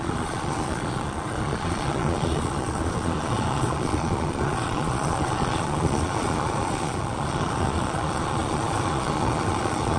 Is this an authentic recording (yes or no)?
no